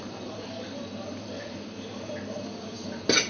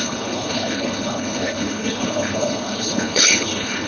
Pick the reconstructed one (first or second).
second